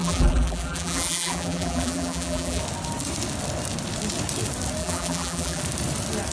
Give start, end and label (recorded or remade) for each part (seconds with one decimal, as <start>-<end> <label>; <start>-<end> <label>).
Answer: 0.0-2.6 remade; 2.6-4.8 recorded; 4.8-5.6 remade; 5.6-6.3 recorded